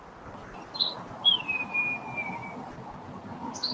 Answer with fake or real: real